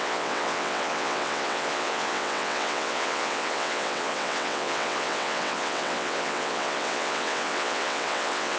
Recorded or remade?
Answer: remade